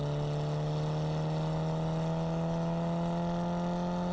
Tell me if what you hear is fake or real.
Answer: real